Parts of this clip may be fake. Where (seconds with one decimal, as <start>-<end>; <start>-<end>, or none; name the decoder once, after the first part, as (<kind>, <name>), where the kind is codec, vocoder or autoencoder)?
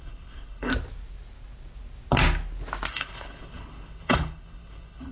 0.0-0.7 (codec, HILCodec); 2.9-5.1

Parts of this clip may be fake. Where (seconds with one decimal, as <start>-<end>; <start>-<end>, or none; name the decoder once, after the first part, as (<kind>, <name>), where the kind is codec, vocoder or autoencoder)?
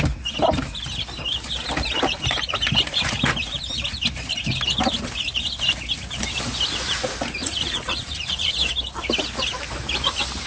7.4-8.5 (vocoder, Vocos)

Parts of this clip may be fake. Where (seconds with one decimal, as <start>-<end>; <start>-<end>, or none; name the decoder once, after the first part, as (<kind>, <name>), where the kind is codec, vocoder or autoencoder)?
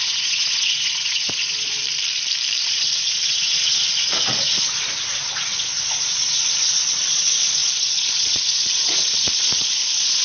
0.0-1.8 (vocoder, Vocos); 2.6-10.2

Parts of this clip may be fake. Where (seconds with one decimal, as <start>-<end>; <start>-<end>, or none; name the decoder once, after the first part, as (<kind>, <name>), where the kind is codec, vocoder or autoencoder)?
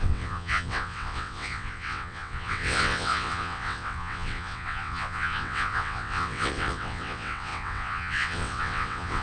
0.0-9.2 (vocoder, WaveNeXt)